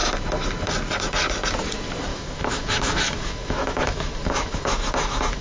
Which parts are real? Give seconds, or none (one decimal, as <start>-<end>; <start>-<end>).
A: 0.0-2.1